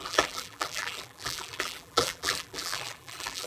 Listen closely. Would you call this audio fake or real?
fake